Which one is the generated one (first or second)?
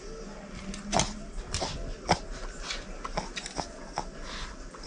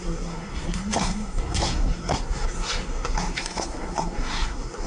second